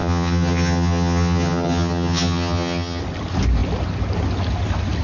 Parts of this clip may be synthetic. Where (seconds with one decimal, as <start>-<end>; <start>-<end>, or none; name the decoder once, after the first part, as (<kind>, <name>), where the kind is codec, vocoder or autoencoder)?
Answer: 0.0-3.0 (vocoder, HiFi-GAN)